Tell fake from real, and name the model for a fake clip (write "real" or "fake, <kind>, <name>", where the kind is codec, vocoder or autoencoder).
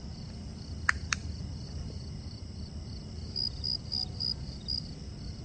real